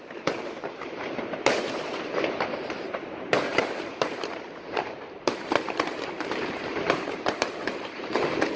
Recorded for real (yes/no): no